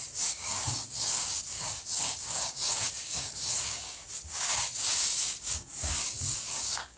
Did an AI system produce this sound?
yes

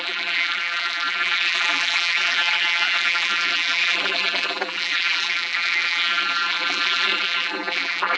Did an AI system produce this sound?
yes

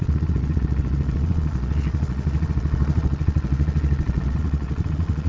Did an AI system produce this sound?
yes